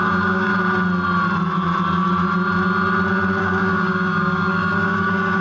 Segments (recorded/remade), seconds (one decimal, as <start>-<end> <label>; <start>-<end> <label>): 0.0-0.5 remade; 0.5-3.4 recorded; 3.4-5.4 remade